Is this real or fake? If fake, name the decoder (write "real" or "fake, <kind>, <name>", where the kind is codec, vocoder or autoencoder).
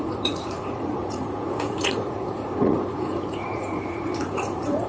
fake, vocoder, Vocos